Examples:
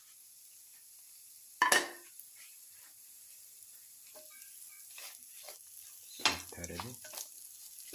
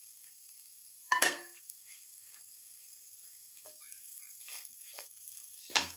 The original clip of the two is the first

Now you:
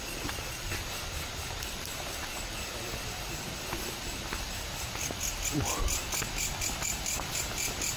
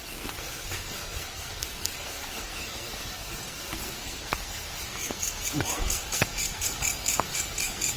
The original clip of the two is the first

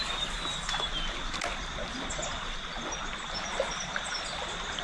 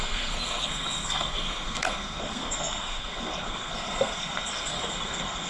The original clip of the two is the first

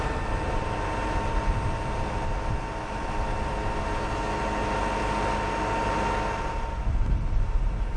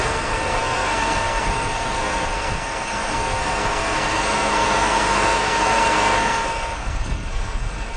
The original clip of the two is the first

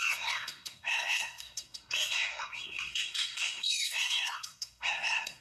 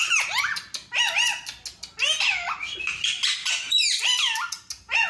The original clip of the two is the second